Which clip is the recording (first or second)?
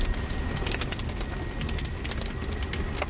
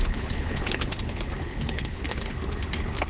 first